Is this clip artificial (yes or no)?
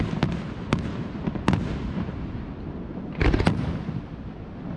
no